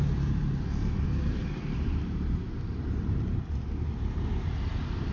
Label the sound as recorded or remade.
remade